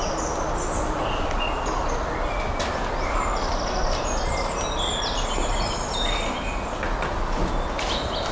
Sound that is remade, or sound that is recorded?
recorded